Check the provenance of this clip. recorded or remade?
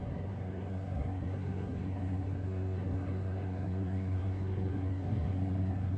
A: remade